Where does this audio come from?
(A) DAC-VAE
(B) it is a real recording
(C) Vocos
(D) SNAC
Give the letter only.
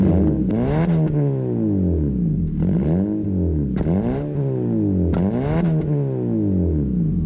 B